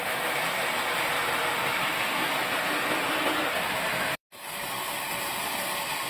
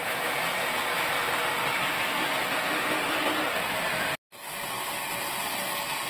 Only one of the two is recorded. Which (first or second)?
second